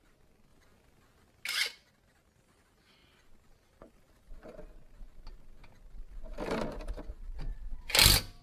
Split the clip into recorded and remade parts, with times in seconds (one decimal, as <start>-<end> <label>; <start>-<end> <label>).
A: 0.0-8.4 recorded